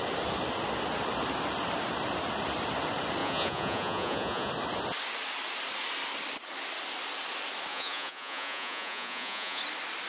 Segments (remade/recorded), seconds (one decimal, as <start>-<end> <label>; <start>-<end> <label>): 0.0-3.2 recorded; 3.2-4.5 remade; 4.5-7.7 recorded; 7.7-9.6 remade; 9.6-10.1 recorded